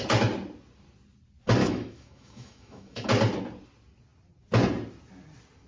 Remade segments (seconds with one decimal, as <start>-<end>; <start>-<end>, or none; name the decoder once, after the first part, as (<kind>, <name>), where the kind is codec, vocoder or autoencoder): 1.6-3.1 (autoencoder, DAC-VAE)